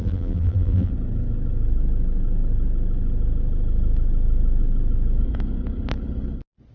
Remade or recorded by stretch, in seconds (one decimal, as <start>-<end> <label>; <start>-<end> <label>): 0.0-0.9 remade; 0.9-6.7 recorded